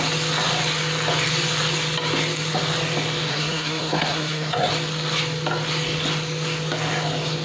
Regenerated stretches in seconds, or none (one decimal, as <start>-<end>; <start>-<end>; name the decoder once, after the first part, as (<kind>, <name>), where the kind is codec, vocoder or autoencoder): 3.3-4.7 (codec, SNAC)